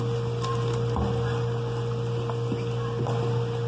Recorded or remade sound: recorded